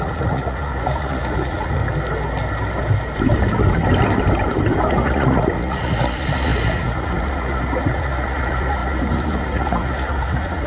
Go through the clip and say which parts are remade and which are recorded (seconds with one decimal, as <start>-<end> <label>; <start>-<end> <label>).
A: 0.0-1.8 remade; 1.8-4.9 recorded; 4.9-10.7 remade